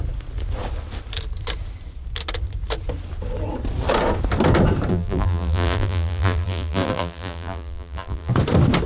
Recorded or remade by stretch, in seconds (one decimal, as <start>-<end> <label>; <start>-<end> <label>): 0.0-4.9 recorded; 4.9-8.3 remade; 8.3-8.9 recorded